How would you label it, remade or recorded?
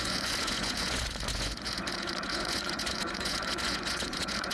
remade